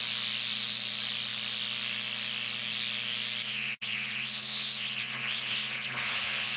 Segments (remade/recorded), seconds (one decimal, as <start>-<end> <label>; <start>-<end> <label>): 0.0-6.6 recorded